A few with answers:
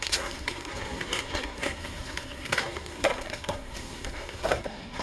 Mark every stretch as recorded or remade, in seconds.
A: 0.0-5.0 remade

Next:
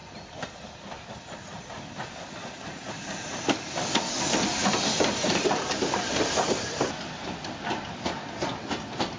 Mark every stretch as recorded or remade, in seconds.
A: 0.0-9.2 recorded

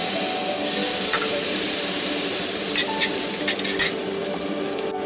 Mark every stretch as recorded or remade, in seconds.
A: 0.0-0.8 recorded; 0.8-3.5 remade; 3.5-5.1 recorded

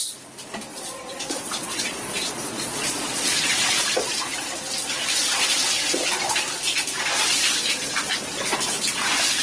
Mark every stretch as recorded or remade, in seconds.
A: 0.0-0.7 recorded; 0.7-3.5 remade; 3.5-9.4 recorded

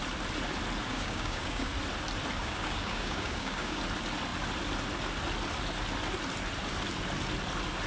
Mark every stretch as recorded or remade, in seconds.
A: 0.0-0.9 recorded; 0.9-1.7 remade; 1.7-2.4 recorded; 2.4-3.8 remade; 3.8-7.9 recorded

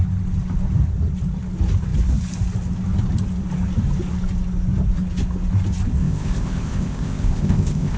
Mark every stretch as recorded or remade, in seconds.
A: 0.0-6.0 recorded; 6.0-8.0 remade